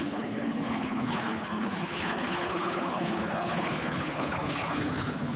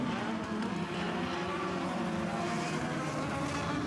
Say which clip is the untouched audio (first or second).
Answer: second